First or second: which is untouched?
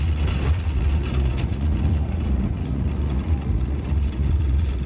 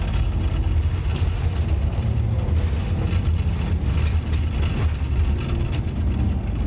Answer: second